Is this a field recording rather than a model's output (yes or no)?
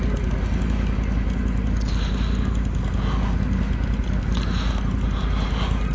yes